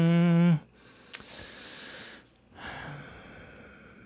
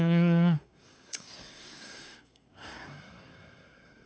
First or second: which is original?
first